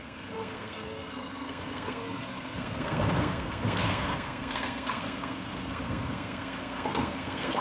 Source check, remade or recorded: remade